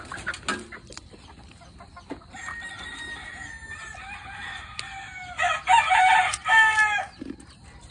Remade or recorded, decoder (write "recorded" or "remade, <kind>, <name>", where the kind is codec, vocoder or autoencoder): recorded